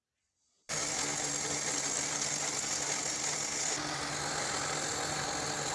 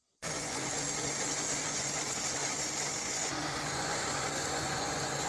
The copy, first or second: second